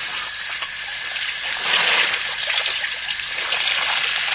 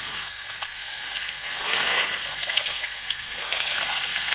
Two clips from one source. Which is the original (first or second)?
first